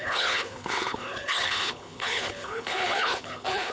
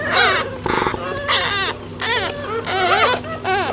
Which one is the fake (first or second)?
first